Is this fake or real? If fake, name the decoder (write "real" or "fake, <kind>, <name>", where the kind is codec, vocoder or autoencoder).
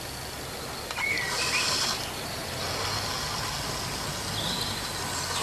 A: real